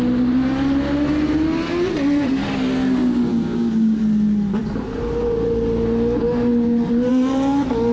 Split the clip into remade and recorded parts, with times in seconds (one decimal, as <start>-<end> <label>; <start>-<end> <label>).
0.0-3.3 recorded; 3.3-4.0 remade; 4.0-7.9 recorded